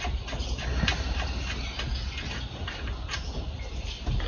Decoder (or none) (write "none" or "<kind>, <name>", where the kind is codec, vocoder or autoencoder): none